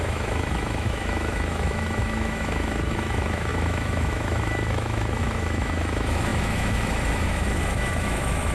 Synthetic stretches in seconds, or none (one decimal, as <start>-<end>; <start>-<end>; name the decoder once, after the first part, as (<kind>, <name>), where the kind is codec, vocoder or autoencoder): 0.0-8.5 (autoencoder, DAC-VAE)